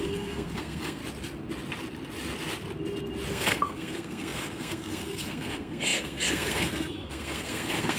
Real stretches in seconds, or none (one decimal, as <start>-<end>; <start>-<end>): 1.0-3.3